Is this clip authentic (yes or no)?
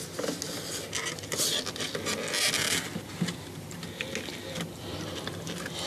yes